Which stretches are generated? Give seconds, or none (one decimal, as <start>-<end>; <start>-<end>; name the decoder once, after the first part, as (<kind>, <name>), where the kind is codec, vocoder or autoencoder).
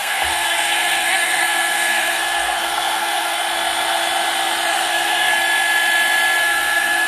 0.0-3.4 (codec, SNAC); 4.7-5.3; 6.4-7.1